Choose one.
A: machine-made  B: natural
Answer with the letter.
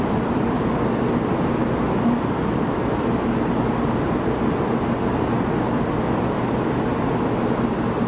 B